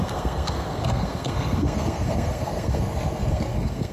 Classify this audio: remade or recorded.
remade